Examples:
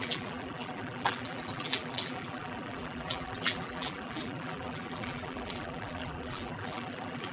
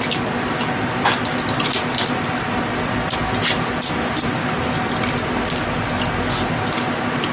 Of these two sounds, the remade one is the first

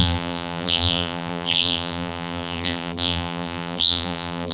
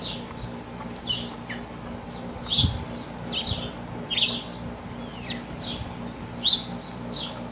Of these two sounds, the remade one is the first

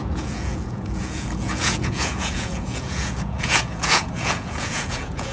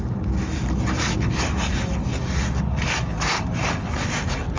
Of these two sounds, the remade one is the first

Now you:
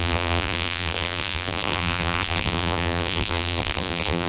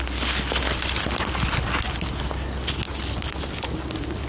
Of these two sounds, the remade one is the first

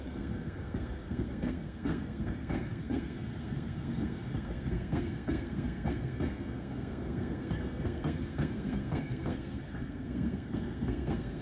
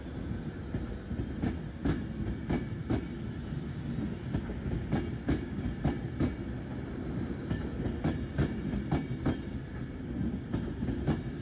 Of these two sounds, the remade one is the first